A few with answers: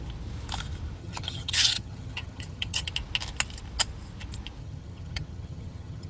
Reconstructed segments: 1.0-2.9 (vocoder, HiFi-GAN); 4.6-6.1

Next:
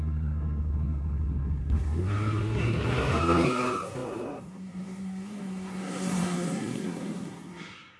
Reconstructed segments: 0.0-8.0 (codec, SNAC)

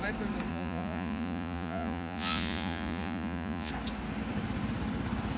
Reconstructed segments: 0.5-3.7 (vocoder, Vocos)

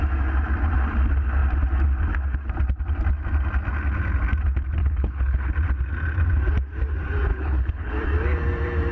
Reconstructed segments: 4.8-5.5 (codec, HILCodec); 7.3-7.9

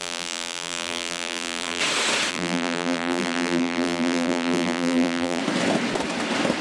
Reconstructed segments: 0.0-1.8 (vocoder, BigVGAN v2); 2.3-5.4

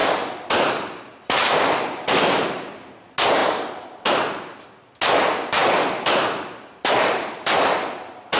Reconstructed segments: 0.0-2.1 (vocoder, BigVGAN v2); 5.6-7.6

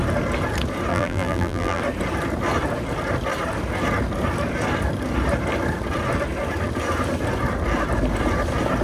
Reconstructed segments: 0.9-1.8 (vocoder, BigVGAN v2)